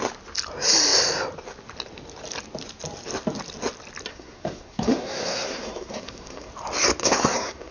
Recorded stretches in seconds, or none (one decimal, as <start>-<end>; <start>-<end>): 0.0-4.1; 6.5-7.0